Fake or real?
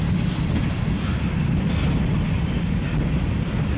real